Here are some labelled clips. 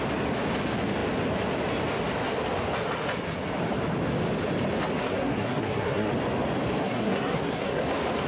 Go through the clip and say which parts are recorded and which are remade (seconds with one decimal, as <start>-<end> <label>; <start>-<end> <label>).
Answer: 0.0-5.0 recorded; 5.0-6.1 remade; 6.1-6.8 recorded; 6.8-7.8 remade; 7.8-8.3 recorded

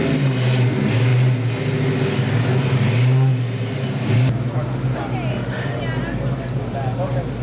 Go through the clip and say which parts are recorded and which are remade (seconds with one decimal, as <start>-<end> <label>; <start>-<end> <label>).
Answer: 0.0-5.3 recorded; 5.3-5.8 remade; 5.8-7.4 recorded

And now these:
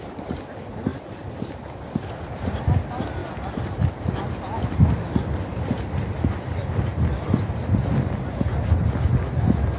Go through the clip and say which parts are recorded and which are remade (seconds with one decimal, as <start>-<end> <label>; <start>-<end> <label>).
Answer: 0.0-0.9 recorded; 0.9-2.4 remade; 2.4-9.8 recorded

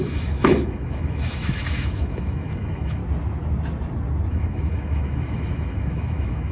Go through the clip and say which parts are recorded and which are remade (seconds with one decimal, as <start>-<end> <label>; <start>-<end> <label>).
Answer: 0.0-3.0 remade; 3.0-4.3 recorded; 4.3-6.5 remade